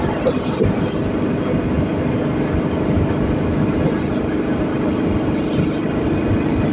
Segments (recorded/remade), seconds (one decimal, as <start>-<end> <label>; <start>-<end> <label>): 0.0-6.7 recorded